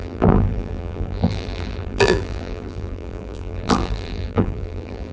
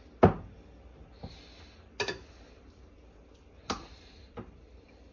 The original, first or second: second